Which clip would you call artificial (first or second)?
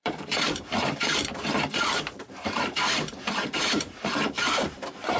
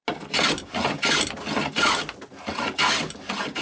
first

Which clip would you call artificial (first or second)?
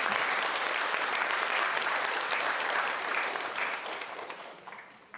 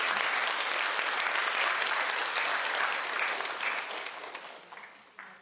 first